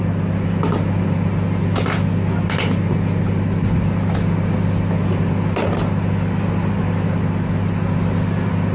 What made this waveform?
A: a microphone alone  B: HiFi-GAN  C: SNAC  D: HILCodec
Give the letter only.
A